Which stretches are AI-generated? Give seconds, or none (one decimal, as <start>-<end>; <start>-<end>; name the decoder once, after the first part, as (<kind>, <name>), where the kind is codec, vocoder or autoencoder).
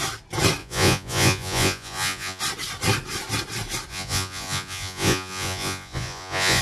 0.6-2.4 (vocoder, Vocos); 3.9-6.6